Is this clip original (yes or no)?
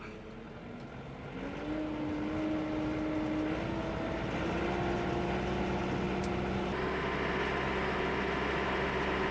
yes